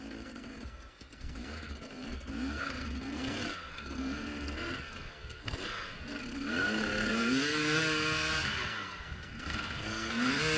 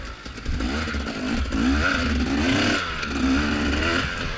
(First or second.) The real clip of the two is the second